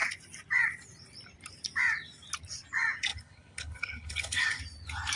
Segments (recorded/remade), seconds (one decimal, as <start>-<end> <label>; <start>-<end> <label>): 0.0-3.1 recorded; 3.1-4.6 remade; 4.6-5.2 recorded